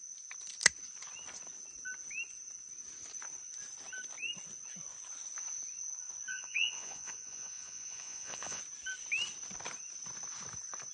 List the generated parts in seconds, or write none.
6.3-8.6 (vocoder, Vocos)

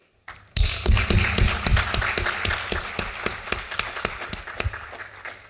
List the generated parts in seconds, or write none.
0.5-1.1 (codec, SNAC)

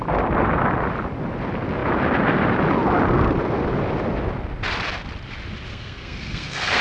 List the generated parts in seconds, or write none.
5.7-6.8 (codec, SNAC)